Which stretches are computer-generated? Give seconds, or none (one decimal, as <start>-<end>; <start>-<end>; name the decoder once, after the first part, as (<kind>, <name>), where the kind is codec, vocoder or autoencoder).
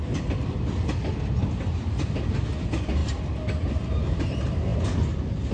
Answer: none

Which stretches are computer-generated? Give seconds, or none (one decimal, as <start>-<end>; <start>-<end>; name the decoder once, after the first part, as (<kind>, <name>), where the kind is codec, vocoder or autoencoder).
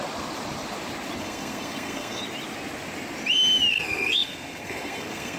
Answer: 1.2-2.2 (codec, SNAC); 3.7-5.4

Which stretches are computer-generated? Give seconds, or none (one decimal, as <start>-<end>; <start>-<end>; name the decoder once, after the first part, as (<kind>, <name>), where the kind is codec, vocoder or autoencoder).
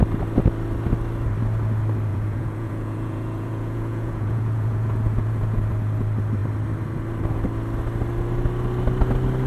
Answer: 2.1-5.7 (vocoder, Vocos)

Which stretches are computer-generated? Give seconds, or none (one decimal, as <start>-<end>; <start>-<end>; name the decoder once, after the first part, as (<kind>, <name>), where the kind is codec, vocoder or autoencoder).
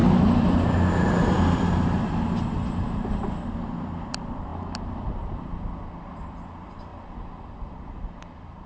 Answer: none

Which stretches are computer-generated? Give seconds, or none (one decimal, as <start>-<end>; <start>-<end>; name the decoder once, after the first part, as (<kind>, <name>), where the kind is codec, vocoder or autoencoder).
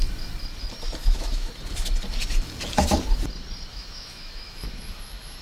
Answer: 1.0-1.5 (autoencoder, DAC-VAE); 3.7-5.4